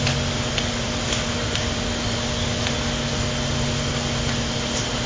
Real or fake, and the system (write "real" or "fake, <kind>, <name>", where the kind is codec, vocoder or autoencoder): real